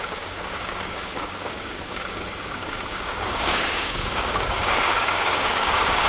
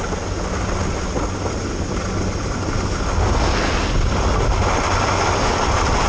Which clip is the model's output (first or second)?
first